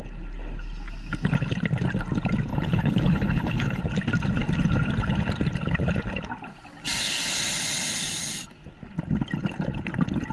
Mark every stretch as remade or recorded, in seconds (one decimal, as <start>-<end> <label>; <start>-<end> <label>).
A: 0.0-2.5 recorded; 2.5-3.8 remade; 3.8-10.3 recorded